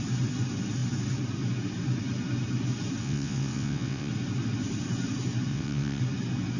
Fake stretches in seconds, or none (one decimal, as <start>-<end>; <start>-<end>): 3.0-4.1; 5.5-6.0